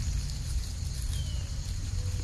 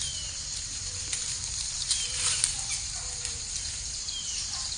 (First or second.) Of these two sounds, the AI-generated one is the second